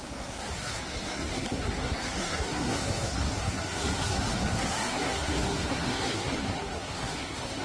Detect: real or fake fake